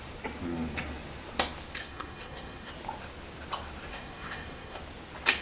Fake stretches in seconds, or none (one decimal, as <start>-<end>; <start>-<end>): 1.8-2.7; 3.9-4.8